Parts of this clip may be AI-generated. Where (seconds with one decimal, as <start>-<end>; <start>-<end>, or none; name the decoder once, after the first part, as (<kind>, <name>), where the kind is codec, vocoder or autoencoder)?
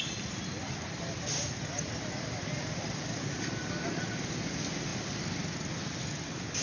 none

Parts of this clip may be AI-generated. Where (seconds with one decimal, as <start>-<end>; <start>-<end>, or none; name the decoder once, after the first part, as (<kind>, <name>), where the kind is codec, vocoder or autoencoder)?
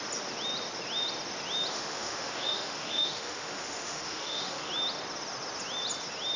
1.7-4.7 (autoencoder, DAC-VAE)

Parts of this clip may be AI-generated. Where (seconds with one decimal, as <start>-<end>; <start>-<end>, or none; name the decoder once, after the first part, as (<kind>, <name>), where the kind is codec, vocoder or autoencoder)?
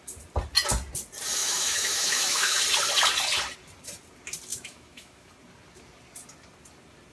1.4-2.6 (autoencoder, DAC-VAE); 4.5-5.3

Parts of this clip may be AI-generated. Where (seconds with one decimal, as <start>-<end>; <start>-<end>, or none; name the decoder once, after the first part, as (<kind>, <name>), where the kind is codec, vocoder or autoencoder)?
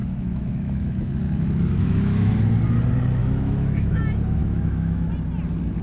0.0-2.3 (autoencoder, DAC-VAE); 3.2-4.0; 4.4-5.1